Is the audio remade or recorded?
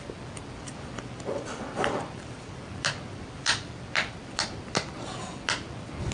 remade